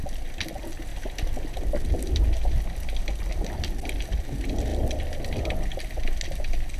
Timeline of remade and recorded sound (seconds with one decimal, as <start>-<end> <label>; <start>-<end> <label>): 0.0-6.8 recorded